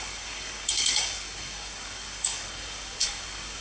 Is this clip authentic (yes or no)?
no